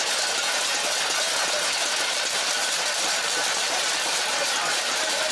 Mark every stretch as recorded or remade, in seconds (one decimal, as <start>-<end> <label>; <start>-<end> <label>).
0.0-1.8 recorded; 1.8-5.3 remade